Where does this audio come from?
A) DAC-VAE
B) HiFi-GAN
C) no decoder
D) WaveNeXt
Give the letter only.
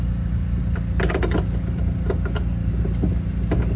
C